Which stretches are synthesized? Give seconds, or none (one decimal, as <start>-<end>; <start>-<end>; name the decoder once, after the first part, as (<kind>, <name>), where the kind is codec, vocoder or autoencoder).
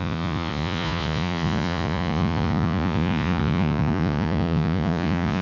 0.0-5.4 (vocoder, Vocos)